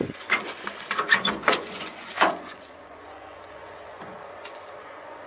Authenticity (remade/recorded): remade